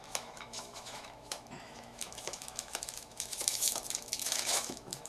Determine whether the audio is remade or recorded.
remade